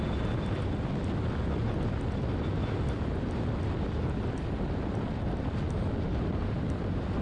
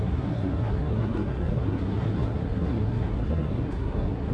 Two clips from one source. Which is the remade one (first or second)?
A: second